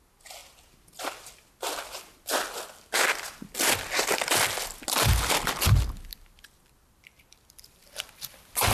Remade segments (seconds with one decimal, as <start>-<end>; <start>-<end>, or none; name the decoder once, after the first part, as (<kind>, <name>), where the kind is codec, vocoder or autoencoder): none